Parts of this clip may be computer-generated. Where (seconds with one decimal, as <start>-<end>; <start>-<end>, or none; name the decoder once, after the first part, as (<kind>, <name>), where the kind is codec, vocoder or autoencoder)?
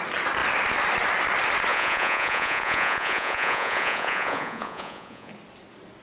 1.7-5.3 (vocoder, Vocos)